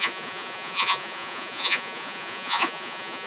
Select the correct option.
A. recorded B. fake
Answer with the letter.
B